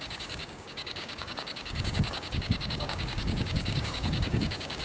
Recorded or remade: remade